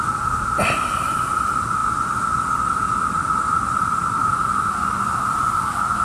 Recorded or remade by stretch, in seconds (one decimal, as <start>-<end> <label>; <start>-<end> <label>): 0.0-2.8 recorded; 2.8-3.3 remade; 3.3-6.0 recorded